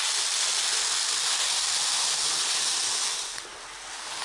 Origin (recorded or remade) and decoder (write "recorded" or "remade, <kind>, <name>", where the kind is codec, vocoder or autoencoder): recorded